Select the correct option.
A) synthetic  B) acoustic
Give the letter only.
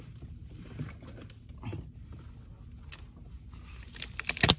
B